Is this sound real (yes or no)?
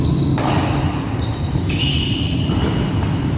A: yes